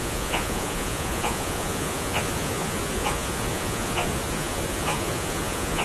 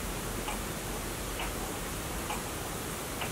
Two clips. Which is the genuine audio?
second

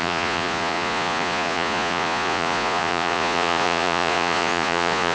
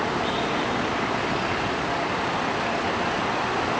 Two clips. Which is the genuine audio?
second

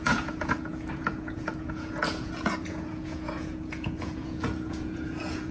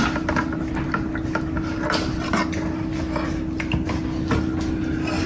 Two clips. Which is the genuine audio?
second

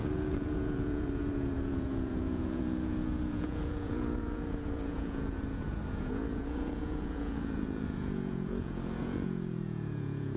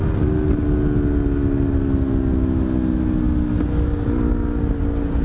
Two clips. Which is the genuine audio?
second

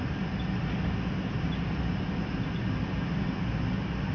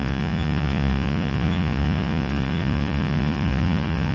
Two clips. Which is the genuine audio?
first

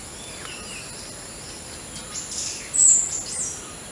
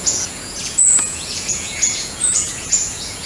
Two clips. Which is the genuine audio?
first